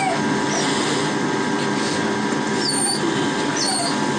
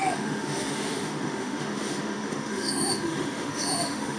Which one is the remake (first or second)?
second